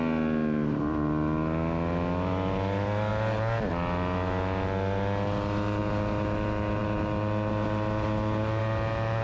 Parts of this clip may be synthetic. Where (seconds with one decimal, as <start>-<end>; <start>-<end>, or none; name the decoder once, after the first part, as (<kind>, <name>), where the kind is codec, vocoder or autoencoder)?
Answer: none